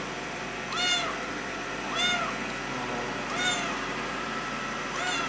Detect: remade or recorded recorded